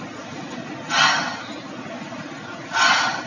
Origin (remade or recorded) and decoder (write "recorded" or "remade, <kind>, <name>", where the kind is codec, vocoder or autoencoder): recorded